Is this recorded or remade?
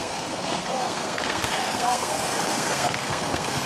remade